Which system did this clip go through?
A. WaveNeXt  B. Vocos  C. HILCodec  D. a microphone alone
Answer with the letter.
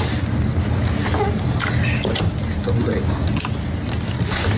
D